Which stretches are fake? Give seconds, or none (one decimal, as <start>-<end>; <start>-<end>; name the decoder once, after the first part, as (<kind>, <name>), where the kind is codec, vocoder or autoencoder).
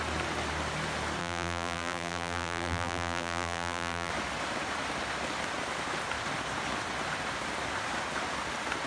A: 1.2-4.1 (vocoder, BigVGAN v2)